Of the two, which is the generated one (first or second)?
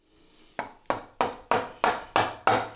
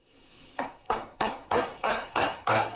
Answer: second